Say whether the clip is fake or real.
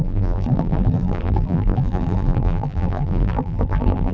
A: fake